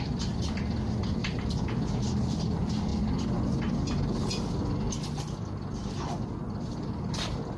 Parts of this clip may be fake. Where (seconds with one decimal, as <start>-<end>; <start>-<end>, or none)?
none